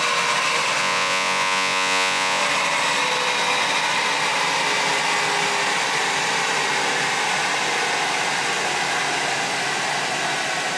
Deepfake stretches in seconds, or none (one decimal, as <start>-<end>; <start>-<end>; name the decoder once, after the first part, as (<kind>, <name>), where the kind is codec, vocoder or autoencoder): 0.8-2.4 (vocoder, Vocos)